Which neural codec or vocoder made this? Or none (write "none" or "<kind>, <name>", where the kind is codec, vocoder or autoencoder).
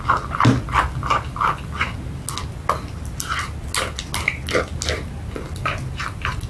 none